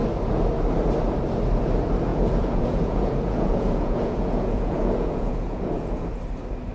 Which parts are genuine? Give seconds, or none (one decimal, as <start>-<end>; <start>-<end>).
0.0-2.1; 6.1-6.7